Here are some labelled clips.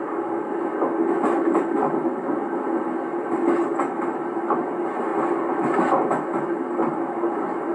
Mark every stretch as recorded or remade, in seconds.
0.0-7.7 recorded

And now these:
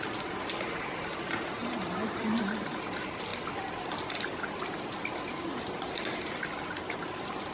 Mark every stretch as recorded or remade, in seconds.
0.0-1.6 recorded; 1.6-2.4 remade; 2.4-7.5 recorded

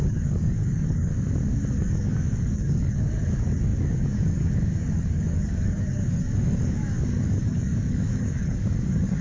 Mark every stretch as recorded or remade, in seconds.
0.0-1.1 remade; 1.1-1.8 recorded; 1.8-9.2 remade

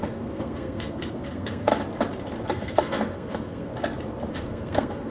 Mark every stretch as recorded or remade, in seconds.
0.0-1.7 remade; 1.7-2.5 recorded; 2.5-3.7 remade; 3.7-4.3 recorded; 4.3-5.1 remade

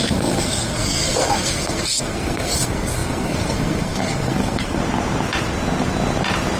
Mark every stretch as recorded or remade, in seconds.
0.0-4.8 remade; 4.8-6.6 recorded

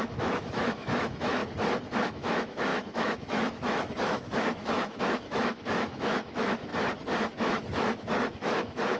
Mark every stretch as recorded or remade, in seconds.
0.0-1.4 remade; 1.4-2.0 recorded; 2.0-6.7 remade; 6.7-7.3 recorded; 7.3-9.0 remade